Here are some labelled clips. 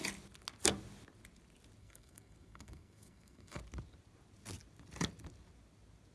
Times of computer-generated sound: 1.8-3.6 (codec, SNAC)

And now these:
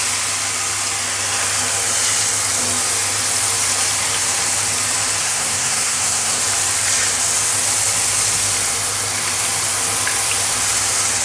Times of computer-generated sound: 5.2-6.4 (codec, SNAC)